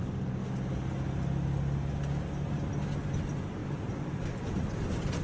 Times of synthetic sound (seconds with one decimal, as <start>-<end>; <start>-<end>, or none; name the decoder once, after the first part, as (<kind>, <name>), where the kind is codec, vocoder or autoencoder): 0.0-0.4 (vocoder, BigVGAN v2); 3.2-5.2